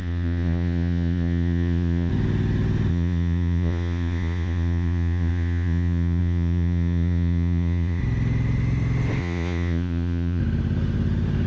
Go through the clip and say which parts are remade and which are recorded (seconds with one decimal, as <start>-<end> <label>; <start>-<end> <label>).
0.0-2.1 remade; 2.1-2.9 recorded; 2.9-8.0 remade; 8.0-9.2 recorded; 9.2-10.4 remade; 10.4-11.5 recorded